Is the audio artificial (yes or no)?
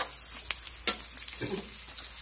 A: no